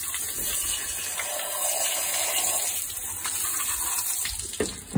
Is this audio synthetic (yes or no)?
no